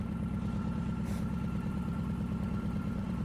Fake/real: fake